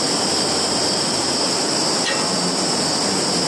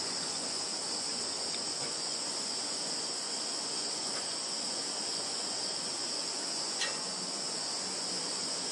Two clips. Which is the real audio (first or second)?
first